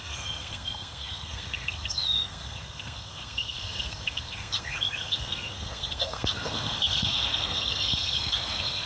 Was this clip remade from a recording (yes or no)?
yes